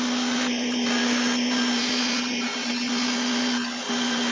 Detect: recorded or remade recorded